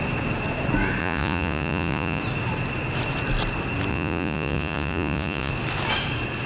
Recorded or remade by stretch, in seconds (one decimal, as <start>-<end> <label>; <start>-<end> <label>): 0.0-1.0 recorded; 1.0-2.2 remade; 2.2-3.9 recorded; 3.9-5.5 remade; 5.5-6.5 recorded